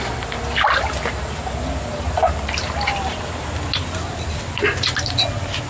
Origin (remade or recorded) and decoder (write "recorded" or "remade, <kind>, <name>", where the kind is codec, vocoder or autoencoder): recorded